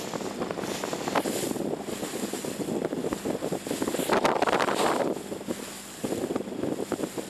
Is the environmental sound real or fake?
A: real